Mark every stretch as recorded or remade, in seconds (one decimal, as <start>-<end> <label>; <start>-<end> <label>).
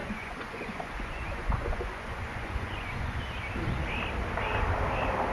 0.0-3.2 remade; 3.2-5.3 recorded